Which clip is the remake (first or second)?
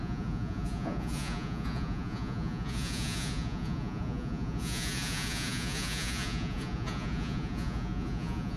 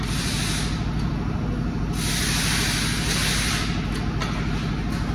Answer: first